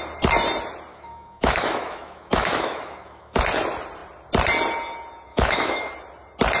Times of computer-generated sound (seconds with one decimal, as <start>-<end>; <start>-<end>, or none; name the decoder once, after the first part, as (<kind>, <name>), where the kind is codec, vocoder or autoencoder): 0.9-3.4 (autoencoder, DAC-VAE); 5.3-5.9